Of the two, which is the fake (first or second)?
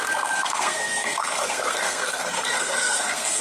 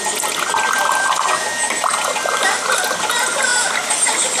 first